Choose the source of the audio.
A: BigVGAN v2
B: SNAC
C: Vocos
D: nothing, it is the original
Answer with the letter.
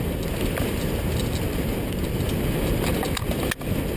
D